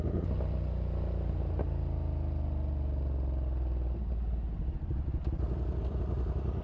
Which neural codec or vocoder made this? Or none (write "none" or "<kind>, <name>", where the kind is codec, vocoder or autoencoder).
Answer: none